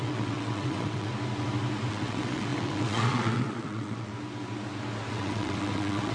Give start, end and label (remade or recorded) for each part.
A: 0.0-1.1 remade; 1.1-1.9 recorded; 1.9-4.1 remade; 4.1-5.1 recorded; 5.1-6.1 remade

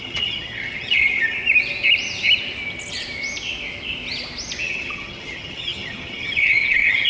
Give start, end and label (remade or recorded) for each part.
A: 0.0-1.4 remade; 1.4-4.6 recorded; 4.6-7.1 remade

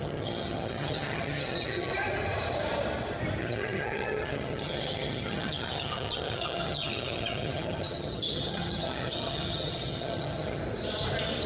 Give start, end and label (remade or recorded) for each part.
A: 0.0-1.9 remade; 1.9-3.4 recorded; 3.4-10.6 remade; 10.6-11.5 recorded

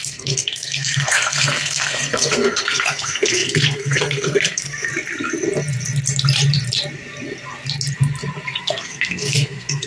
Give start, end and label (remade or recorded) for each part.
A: 0.0-4.9 remade; 4.9-8.6 recorded; 8.6-9.9 remade

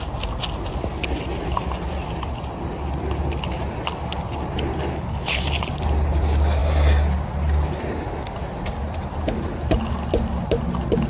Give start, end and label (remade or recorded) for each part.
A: 0.0-4.9 recorded; 4.9-5.4 remade; 5.4-11.1 recorded

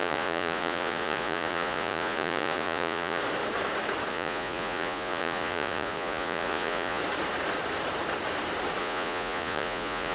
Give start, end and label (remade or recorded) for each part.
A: 0.0-3.2 remade; 3.2-4.1 recorded; 4.1-7.0 remade; 7.0-8.8 recorded; 8.8-10.1 remade